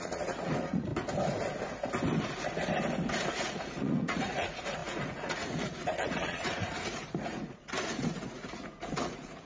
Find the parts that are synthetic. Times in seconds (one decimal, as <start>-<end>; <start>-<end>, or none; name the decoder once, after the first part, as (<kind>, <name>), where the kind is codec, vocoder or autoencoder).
0.0-0.9 (vocoder, Vocos); 3.4-9.5